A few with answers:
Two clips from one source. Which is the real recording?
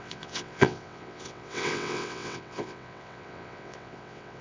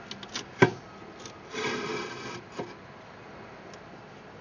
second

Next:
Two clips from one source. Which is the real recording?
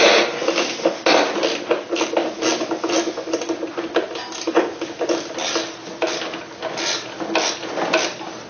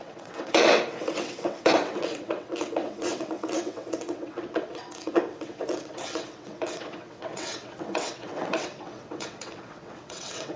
first